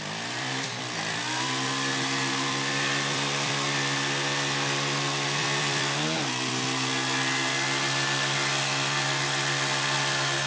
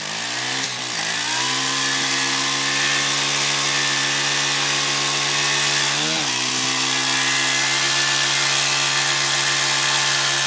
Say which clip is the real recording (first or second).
second